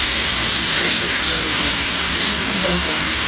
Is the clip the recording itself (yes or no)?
no